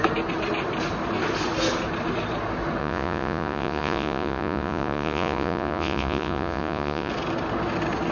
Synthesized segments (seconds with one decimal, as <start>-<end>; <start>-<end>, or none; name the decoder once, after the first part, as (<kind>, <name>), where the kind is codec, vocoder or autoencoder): 2.8-7.1 (vocoder, Vocos)